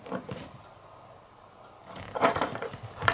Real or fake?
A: real